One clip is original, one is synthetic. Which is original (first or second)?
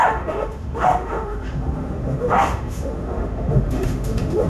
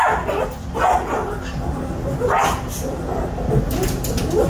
second